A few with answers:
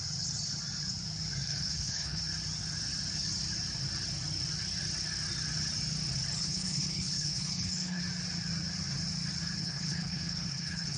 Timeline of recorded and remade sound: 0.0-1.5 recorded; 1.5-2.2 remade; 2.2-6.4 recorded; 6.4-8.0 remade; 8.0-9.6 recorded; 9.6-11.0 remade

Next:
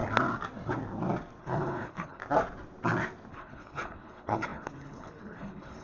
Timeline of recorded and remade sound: 0.0-1.4 recorded; 1.4-2.2 remade; 2.2-3.3 recorded; 3.3-5.8 remade

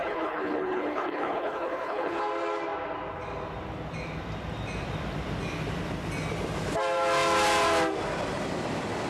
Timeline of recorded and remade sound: 0.0-2.2 remade; 2.2-9.1 recorded

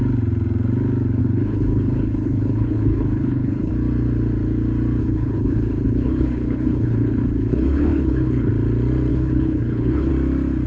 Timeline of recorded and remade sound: 0.0-1.2 recorded; 1.2-3.7 remade; 3.7-5.0 recorded; 5.0-8.5 remade; 8.5-9.1 recorded; 9.1-10.1 remade; 10.1-10.7 recorded

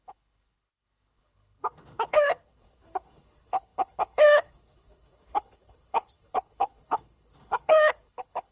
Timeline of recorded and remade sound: 0.0-8.5 remade

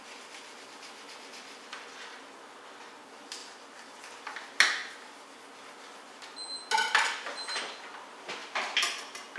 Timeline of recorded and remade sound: 0.0-9.4 recorded

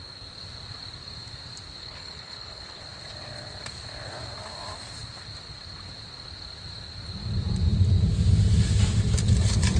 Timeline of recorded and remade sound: 0.0-1.8 recorded; 1.8-2.8 remade; 2.8-9.8 recorded

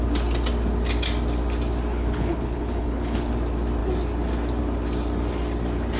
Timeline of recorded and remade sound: 0.0-1.9 recorded; 1.9-3.3 remade; 3.3-6.0 recorded